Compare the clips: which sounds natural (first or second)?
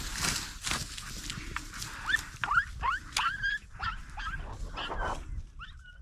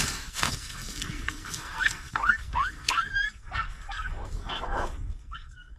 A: first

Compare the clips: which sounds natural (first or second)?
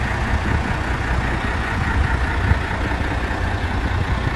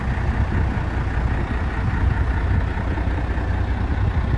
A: second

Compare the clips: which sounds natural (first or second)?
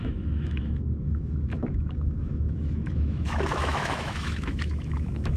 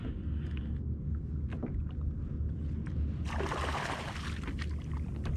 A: second